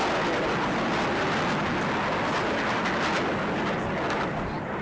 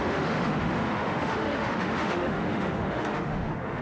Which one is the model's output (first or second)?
second